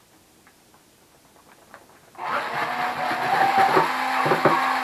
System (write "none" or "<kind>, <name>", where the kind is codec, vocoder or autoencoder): none